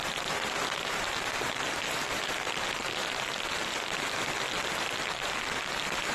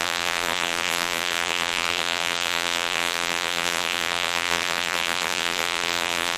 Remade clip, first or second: second